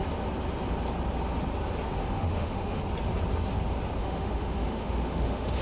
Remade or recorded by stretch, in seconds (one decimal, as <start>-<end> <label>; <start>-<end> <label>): 0.0-2.0 recorded; 2.0-2.8 remade; 2.8-4.0 recorded; 4.0-5.6 remade